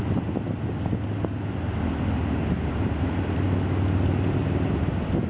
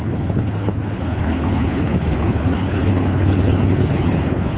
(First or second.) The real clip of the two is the first